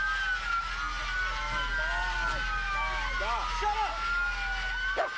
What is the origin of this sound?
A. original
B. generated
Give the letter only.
A